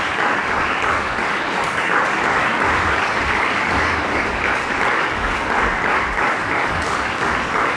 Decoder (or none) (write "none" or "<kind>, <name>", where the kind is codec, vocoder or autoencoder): codec, DAC